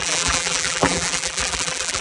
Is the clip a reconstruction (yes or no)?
yes